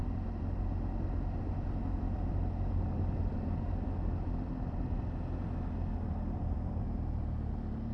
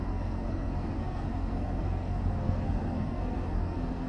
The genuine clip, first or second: first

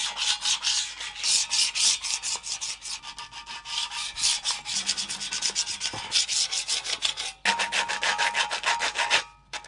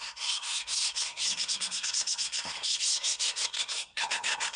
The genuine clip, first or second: first